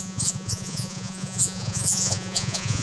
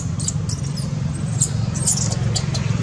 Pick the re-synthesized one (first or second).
first